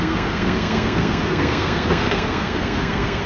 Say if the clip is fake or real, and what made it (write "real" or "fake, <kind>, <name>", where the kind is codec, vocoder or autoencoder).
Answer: fake, codec, SNAC